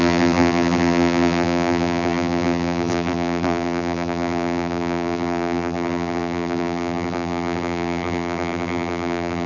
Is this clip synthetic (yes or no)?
yes